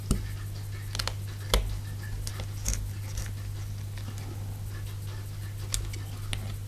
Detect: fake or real real